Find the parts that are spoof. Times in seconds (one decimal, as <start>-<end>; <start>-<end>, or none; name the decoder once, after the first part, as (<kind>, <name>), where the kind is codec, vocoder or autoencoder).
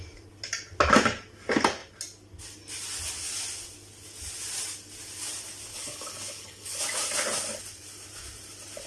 5.7-6.8 (codec, HILCodec)